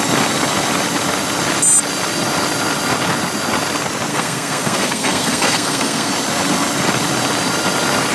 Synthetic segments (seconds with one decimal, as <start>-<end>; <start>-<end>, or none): 4.1-6.1